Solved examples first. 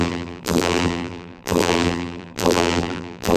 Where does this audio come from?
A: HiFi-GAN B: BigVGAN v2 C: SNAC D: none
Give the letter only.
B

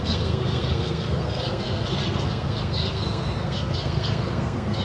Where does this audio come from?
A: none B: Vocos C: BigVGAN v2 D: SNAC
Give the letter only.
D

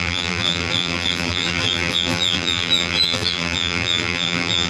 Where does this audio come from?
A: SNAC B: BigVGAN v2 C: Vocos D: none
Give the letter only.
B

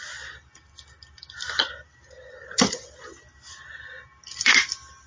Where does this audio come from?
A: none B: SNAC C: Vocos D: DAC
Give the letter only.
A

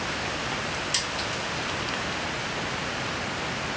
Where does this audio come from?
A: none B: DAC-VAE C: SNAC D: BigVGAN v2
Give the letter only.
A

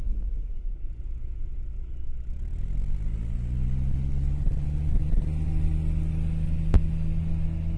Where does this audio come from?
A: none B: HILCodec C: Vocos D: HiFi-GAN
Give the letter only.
A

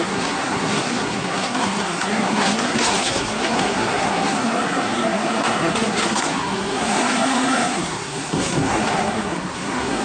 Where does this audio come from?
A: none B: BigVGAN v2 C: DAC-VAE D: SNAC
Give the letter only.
D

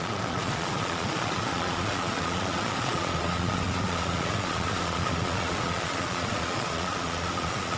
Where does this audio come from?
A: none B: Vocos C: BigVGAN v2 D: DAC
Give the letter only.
B